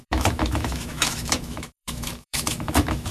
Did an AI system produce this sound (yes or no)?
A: yes